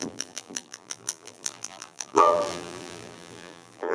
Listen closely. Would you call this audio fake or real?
fake